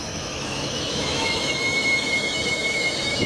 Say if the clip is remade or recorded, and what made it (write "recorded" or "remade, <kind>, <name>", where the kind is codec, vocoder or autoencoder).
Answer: remade, autoencoder, DAC-VAE